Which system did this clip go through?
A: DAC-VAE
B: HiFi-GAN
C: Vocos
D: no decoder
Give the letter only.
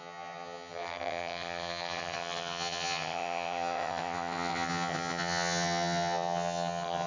B